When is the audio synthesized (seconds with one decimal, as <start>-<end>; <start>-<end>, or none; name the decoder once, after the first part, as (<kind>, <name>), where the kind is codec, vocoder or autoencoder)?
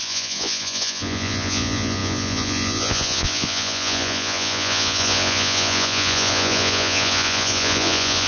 0.0-8.3 (vocoder, Vocos)